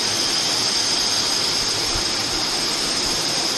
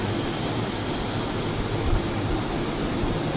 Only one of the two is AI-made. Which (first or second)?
first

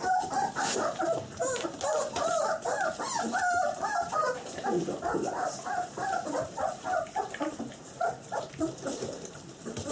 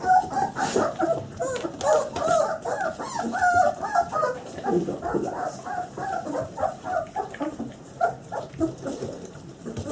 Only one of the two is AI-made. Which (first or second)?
first